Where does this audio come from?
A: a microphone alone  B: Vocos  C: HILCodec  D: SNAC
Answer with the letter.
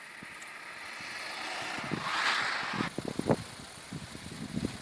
A